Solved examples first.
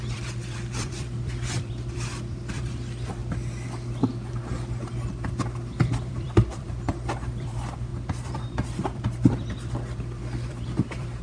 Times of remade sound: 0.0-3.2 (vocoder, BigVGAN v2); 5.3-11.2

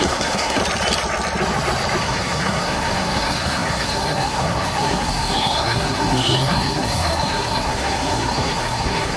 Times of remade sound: 0.0-0.6 (codec, SNAC); 2.0-9.2

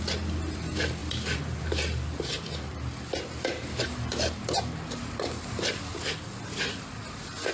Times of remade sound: none

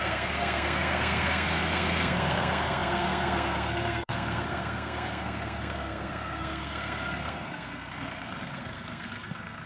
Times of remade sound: 0.0-9.7 (codec, SNAC)

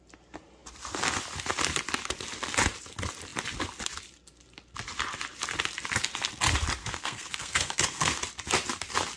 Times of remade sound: 6.8-8.2 (codec, SNAC)

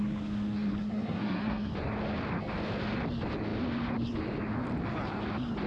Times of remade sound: 0.8-1.7 (codec, SNAC)

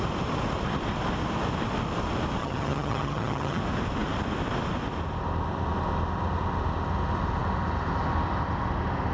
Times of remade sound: 2.4-3.6 (vocoder, HiFi-GAN)